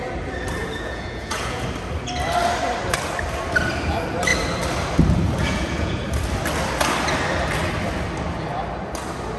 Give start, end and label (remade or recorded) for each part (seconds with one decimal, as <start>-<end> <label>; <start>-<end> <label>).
0.0-0.6 recorded; 0.6-1.6 remade; 1.6-5.4 recorded; 5.4-6.0 remade; 6.0-9.4 recorded